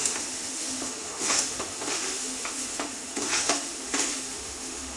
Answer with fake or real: fake